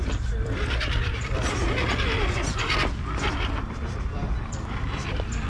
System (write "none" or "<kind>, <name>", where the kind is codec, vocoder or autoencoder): vocoder, BigVGAN v2